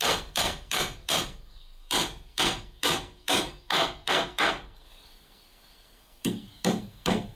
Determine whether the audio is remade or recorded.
remade